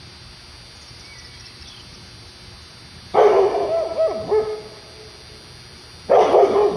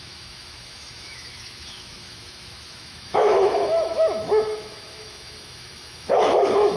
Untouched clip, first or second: first